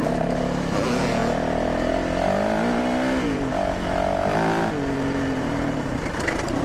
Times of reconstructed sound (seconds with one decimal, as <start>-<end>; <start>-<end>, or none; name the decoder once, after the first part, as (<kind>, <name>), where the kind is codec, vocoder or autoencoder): none

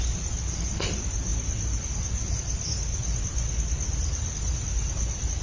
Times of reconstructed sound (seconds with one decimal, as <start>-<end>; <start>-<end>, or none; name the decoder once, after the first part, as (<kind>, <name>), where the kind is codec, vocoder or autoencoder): none

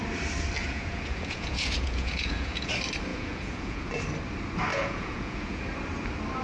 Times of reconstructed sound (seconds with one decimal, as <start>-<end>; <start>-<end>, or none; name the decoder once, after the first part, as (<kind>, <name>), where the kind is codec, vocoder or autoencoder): 0.6-2.7 (vocoder, Vocos); 3.1-3.9; 4.7-5.6

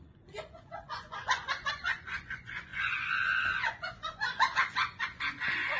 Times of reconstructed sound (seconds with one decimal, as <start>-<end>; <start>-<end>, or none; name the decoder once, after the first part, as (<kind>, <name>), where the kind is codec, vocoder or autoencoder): 0.0-5.8 (vocoder, Vocos)